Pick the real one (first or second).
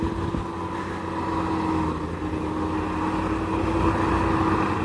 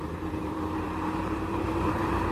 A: first